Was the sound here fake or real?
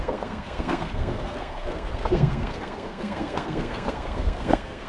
fake